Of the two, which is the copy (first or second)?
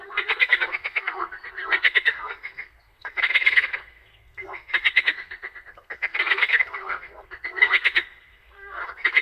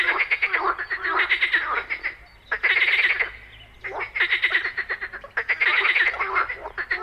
first